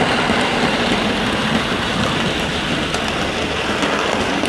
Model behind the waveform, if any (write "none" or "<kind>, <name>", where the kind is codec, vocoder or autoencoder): none